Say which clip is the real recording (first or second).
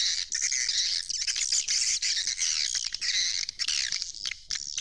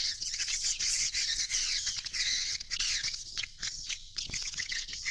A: first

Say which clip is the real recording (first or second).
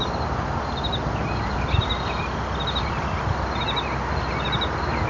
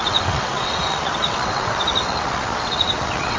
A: first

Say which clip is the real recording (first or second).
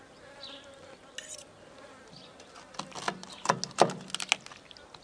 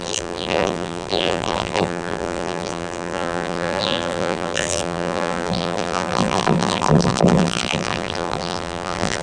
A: first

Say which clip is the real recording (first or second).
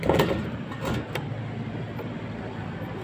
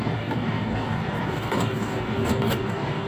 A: first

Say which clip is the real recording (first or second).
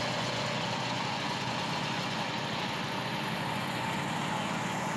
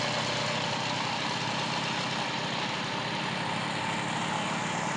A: second